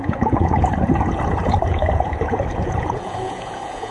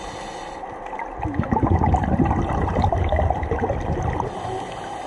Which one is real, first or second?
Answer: second